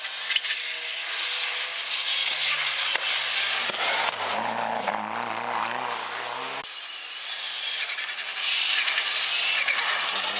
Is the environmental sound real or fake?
real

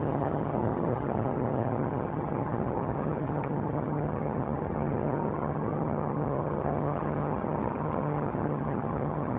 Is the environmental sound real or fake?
fake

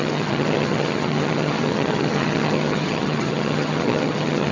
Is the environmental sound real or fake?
fake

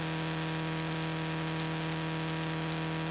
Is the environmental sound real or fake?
real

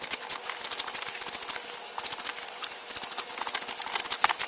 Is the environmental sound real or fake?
real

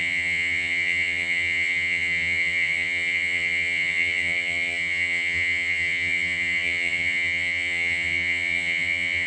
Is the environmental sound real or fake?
fake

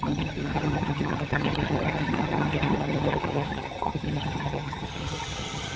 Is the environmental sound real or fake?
fake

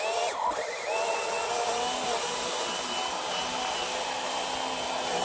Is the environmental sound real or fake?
real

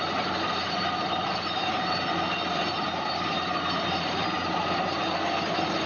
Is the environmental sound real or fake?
real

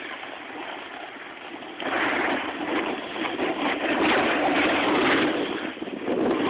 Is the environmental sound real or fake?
real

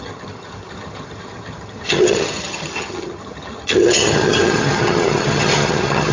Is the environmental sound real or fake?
fake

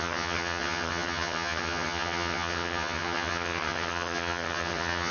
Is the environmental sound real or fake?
fake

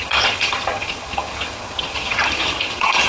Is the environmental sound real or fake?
fake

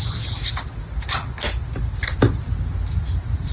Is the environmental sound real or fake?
real